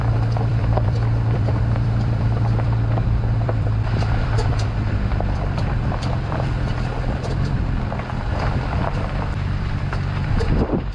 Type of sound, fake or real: fake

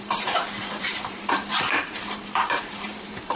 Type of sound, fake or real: fake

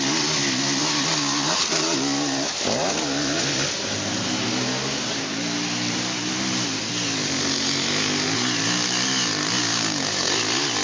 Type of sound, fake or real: real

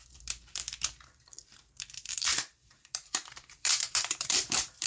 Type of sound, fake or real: fake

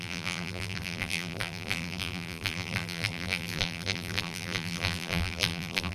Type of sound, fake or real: fake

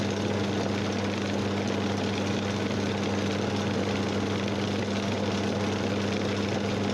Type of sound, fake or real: real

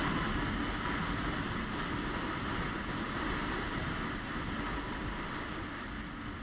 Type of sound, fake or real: fake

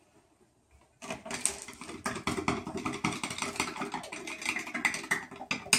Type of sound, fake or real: real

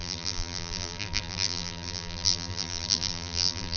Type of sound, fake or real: fake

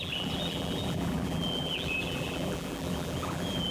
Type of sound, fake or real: fake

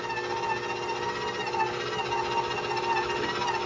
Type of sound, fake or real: real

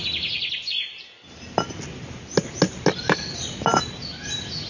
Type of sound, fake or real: real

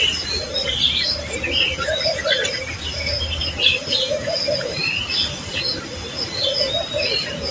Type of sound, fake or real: fake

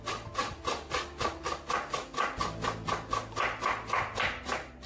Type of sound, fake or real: real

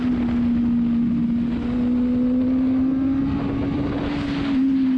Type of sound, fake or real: real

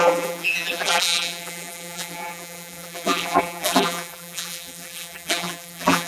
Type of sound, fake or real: fake